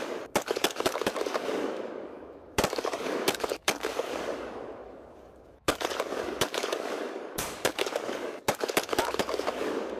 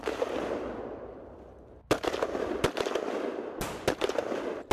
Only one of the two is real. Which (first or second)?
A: second